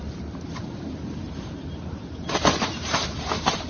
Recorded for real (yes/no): no